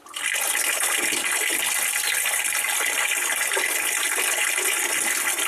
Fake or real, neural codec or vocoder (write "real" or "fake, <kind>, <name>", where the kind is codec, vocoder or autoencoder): real